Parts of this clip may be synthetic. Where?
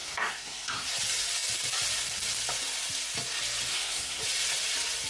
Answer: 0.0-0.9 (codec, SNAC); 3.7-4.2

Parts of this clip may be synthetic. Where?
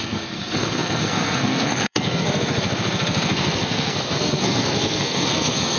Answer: 0.0-5.8 (codec, SNAC)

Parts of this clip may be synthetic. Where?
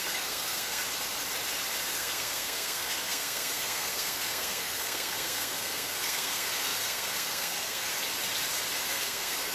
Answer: 0.0-0.8 (codec, SNAC); 1.8-7.9; 8.9-9.5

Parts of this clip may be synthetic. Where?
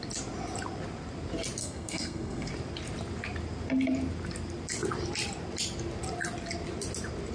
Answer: 1.6-2.5 (codec, SNAC)